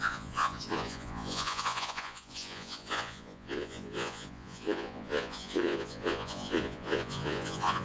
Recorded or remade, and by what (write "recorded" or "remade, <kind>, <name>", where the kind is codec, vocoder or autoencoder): remade, vocoder, Vocos